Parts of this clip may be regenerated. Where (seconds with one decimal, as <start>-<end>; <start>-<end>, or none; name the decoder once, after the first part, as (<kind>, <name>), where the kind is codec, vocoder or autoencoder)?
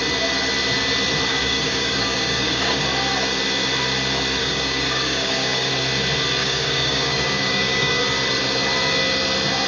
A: 1.3-2.8 (codec, DAC); 4.4-5.7; 6.4-8.0